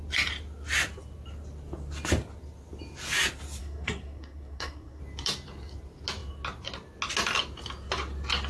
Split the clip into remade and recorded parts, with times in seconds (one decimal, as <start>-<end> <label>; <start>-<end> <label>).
0.0-3.6 recorded; 3.6-5.0 remade; 5.0-8.5 recorded